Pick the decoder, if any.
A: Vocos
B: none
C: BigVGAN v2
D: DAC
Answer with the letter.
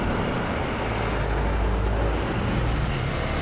B